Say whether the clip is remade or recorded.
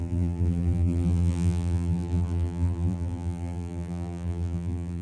remade